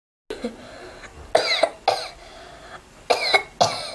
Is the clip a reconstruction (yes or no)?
no